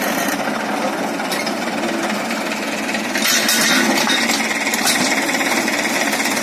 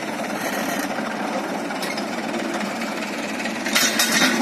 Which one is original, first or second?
first